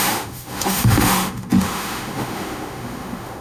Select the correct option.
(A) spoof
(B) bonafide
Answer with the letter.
A